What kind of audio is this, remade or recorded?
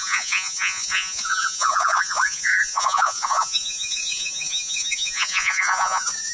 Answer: remade